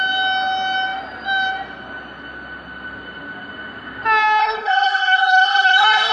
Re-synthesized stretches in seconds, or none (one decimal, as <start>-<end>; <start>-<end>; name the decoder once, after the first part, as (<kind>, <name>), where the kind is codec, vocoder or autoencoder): 4.4-6.1 (codec, SNAC)